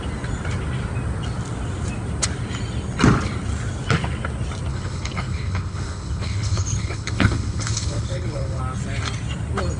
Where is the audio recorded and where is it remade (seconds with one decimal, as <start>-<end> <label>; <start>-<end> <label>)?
0.0-4.7 recorded; 4.7-8.6 remade; 8.6-9.8 recorded